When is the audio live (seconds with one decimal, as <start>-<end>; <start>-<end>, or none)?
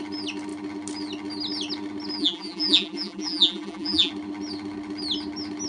0.0-2.2; 4.1-5.7